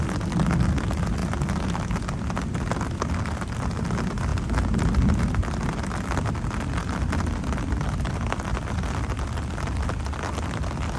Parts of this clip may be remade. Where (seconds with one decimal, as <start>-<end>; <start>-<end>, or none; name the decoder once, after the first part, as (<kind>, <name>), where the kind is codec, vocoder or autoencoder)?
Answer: none